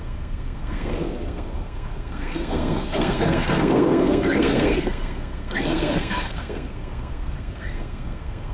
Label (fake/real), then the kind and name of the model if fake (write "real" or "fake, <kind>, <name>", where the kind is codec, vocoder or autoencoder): fake, codec, SNAC